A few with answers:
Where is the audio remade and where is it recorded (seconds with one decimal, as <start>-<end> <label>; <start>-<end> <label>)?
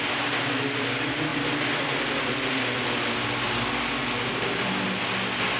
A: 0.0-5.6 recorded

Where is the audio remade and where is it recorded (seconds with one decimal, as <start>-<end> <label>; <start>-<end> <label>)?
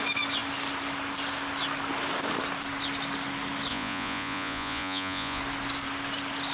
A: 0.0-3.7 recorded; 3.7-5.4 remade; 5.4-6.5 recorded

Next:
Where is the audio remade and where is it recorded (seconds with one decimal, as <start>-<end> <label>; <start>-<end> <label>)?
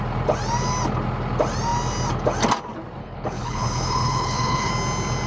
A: 0.0-3.0 recorded; 3.0-4.7 remade; 4.7-5.3 recorded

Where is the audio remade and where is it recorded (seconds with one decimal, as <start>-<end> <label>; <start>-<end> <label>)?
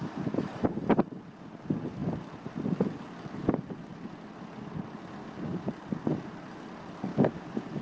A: 0.0-5.2 recorded; 5.2-5.7 remade; 5.7-7.1 recorded; 7.1-7.8 remade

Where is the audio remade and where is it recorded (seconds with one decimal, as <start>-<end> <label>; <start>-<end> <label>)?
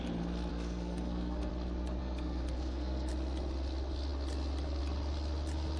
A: 0.0-0.5 recorded; 0.5-1.5 remade; 1.5-2.0 recorded; 2.0-3.1 remade; 3.1-5.8 recorded